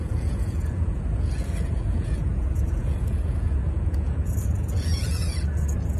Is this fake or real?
fake